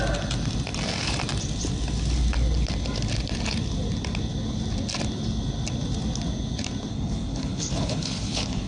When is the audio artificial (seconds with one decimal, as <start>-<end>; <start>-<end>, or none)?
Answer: 6.9-8.7